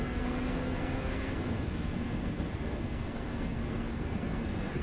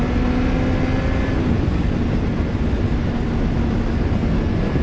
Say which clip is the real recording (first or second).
second